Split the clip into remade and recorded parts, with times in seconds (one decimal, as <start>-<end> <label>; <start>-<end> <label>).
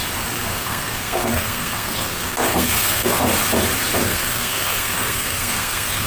0.0-0.5 recorded; 0.5-3.2 remade; 3.2-4.0 recorded; 4.0-6.1 remade